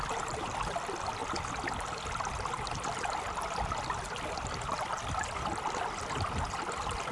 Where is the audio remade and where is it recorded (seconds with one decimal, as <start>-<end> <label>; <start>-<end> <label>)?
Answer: 0.0-7.1 recorded